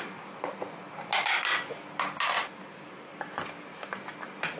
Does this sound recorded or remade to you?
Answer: recorded